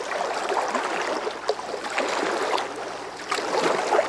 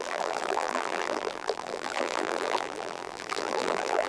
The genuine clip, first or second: first